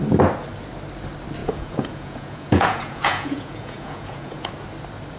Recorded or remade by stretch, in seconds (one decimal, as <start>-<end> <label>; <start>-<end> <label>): 0.0-1.4 recorded; 1.4-4.5 remade; 4.5-5.2 recorded